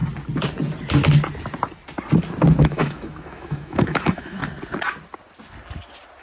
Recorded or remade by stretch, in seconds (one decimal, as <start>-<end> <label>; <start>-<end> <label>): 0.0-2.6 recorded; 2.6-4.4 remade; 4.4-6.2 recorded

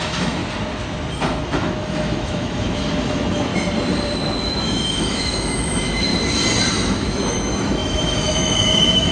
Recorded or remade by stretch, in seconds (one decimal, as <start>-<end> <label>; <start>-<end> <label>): 0.0-0.4 remade; 0.4-1.4 recorded; 1.4-3.5 remade; 3.5-4.4 recorded; 4.4-6.1 remade; 6.1-6.7 recorded; 6.7-9.1 remade

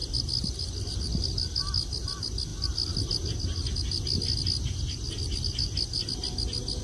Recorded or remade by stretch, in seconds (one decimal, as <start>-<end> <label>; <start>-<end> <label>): 0.0-6.8 recorded